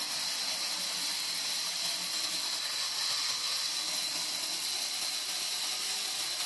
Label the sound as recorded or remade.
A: recorded